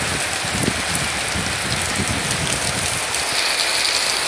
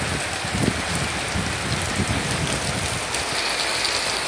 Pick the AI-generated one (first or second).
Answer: second